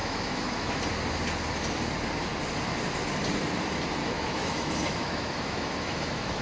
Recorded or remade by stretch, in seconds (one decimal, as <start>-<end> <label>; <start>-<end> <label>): 0.0-0.8 remade; 0.8-4.0 recorded; 4.0-6.4 remade